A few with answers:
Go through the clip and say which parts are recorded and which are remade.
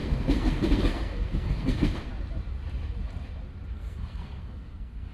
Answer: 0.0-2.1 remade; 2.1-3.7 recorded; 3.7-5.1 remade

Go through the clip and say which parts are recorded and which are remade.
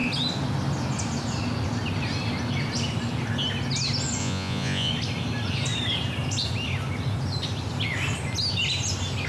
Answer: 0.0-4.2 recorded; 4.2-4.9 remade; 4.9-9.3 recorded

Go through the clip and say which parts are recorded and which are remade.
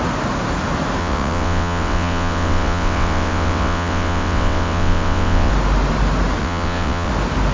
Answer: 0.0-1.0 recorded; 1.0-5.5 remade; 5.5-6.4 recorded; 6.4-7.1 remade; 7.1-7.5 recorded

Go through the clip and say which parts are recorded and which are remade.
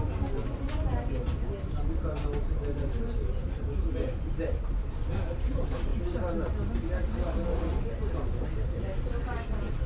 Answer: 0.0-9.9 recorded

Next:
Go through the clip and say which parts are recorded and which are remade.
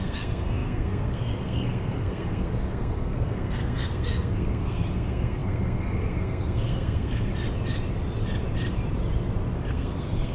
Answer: 0.0-7.3 remade; 7.3-9.7 recorded; 9.7-10.3 remade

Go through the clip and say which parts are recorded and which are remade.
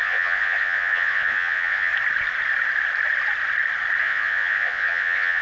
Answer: 0.0-1.9 remade; 1.9-4.0 recorded; 4.0-5.4 remade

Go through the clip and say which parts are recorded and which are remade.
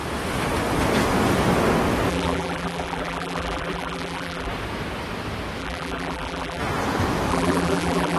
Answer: 0.0-2.1 recorded; 2.1-4.5 remade; 4.5-5.6 recorded; 5.6-6.6 remade; 6.6-7.3 recorded; 7.3-8.2 remade